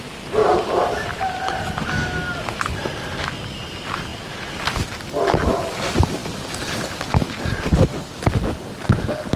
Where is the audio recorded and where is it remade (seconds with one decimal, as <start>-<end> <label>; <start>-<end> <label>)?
0.0-9.4 recorded